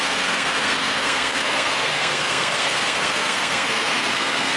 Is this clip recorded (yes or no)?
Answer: no